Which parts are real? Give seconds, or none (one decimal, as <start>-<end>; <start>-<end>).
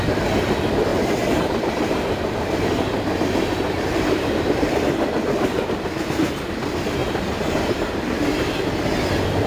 0.0-0.9; 5.6-7.0; 7.7-9.5